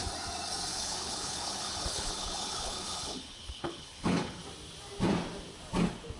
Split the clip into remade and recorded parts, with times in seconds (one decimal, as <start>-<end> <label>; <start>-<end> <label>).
0.0-0.7 recorded; 0.7-4.4 remade; 4.4-6.2 recorded